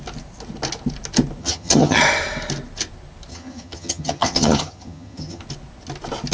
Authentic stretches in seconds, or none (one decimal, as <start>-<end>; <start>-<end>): 0.0-1.4; 2.0-3.3; 5.4-6.3